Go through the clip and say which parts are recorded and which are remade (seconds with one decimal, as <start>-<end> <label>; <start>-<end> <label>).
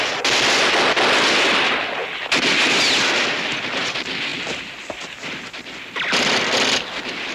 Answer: 0.0-7.3 recorded